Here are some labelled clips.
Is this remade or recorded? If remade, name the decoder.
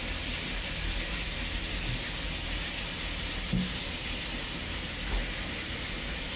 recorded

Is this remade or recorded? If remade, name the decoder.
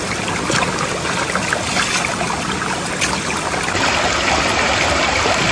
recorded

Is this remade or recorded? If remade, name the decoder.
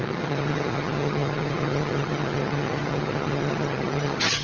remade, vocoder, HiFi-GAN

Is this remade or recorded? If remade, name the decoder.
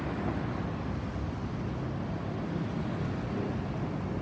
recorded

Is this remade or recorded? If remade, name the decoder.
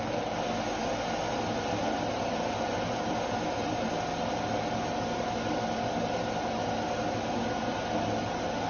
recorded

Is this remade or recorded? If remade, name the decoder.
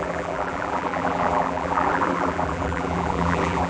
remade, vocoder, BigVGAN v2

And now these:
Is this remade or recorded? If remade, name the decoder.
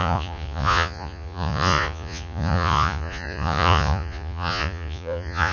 remade, vocoder, Vocos